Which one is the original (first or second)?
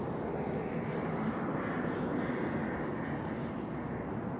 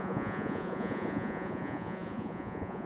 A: first